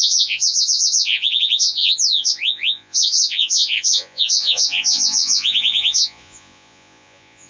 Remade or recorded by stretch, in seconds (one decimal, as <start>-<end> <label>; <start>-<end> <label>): 0.0-7.5 remade